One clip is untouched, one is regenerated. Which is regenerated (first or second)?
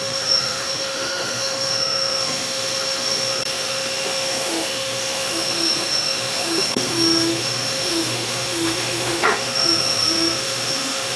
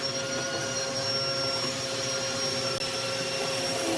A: first